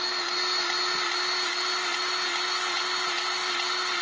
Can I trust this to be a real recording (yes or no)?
yes